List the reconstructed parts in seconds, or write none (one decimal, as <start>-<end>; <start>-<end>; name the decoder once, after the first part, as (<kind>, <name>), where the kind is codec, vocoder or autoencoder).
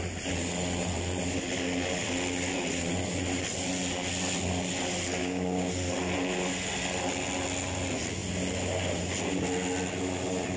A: 5.2-5.7 (codec, DAC)